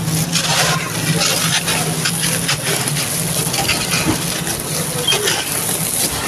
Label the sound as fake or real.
real